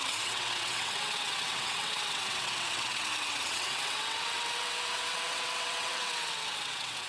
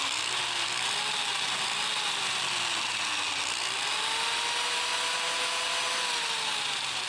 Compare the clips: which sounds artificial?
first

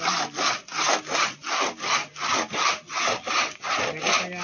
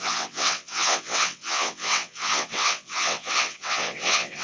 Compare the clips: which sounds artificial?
second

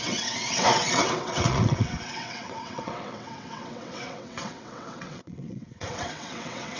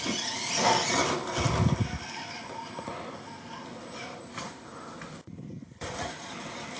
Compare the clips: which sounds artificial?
first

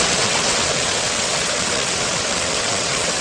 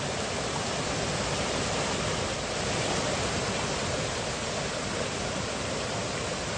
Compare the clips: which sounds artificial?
first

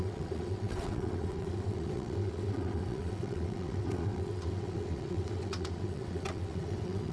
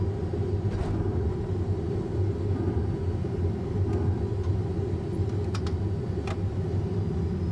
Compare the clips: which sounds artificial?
first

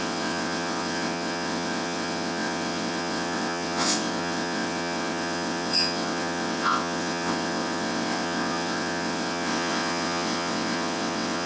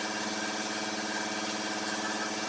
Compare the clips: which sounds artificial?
first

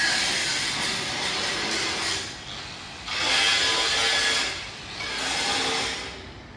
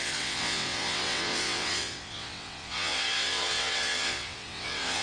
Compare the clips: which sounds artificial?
second